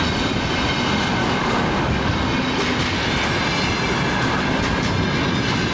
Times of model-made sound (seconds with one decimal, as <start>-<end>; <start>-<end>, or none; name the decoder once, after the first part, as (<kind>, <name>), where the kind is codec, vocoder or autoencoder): 1.2-2.1 (codec, DAC)